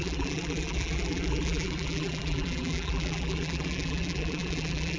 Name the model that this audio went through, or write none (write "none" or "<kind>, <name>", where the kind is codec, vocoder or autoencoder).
vocoder, BigVGAN v2